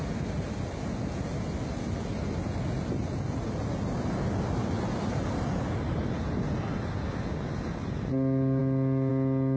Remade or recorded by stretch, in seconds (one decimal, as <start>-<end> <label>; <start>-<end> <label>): 0.0-9.6 recorded